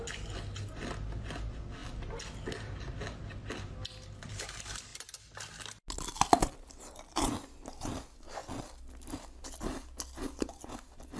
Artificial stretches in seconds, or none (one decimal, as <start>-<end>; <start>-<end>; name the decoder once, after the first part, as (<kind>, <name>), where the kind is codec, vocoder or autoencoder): none